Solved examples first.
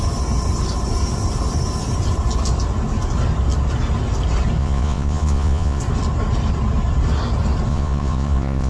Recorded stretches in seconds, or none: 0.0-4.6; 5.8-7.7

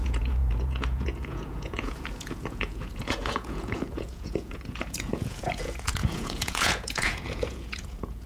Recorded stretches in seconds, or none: none

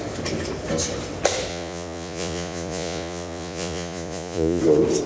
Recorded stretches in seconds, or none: 0.0-1.5; 4.6-5.1

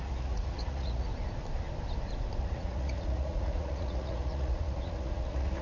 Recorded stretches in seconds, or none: 1.1-2.4

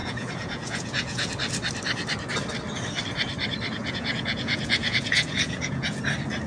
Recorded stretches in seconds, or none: 1.3-3.8; 6.0-6.5

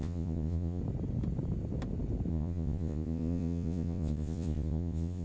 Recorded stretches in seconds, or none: 0.8-2.3

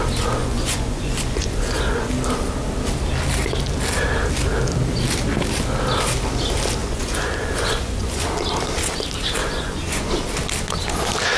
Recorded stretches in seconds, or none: 0.0-0.4; 2.1-6.8; 8.2-9.4; 10.1-11.4